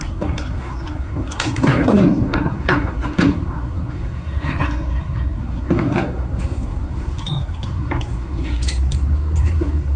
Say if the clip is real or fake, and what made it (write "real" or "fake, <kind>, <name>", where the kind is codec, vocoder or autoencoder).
fake, codec, SNAC